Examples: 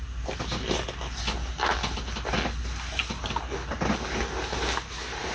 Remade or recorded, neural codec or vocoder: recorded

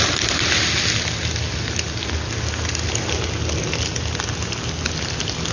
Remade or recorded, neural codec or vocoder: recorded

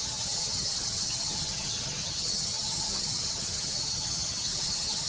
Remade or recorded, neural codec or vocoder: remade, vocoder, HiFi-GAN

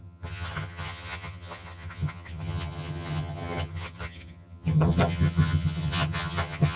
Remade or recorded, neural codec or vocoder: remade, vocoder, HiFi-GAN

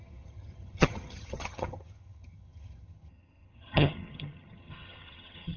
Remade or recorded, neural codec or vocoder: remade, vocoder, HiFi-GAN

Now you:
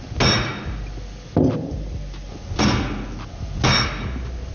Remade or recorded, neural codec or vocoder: recorded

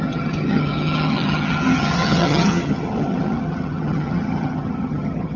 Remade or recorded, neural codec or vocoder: remade, vocoder, HiFi-GAN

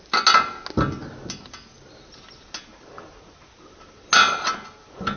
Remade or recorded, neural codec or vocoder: recorded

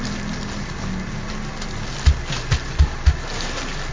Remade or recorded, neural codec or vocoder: recorded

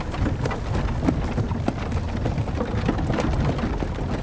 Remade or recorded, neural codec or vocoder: recorded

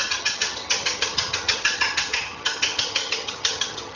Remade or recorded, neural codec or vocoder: remade, vocoder, HiFi-GAN